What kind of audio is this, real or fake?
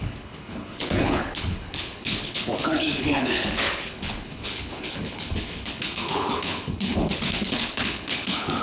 fake